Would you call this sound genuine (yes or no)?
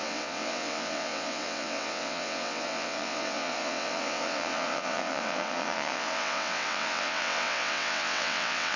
no